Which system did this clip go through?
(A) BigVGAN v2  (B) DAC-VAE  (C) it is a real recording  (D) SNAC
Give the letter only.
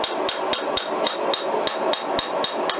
C